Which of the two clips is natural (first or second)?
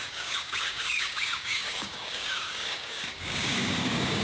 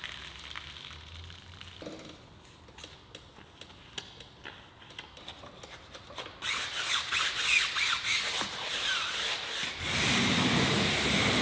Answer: second